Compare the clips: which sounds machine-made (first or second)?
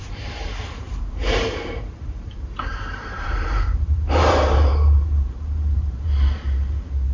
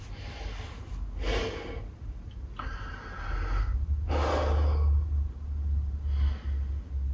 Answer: first